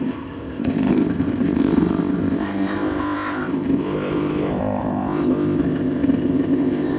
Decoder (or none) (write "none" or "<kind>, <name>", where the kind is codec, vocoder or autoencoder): codec, ZipCodec